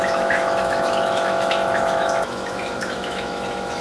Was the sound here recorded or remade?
remade